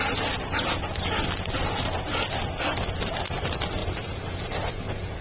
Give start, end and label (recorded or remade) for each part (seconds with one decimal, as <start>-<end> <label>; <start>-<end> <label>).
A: 0.0-3.8 recorded; 3.8-5.2 remade